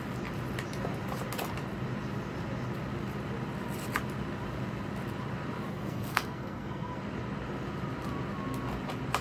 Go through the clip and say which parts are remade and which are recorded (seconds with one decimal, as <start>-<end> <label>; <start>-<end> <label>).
0.0-5.7 recorded; 5.7-7.0 remade; 7.0-9.2 recorded